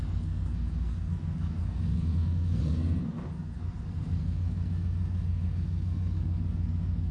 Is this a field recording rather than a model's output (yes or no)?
no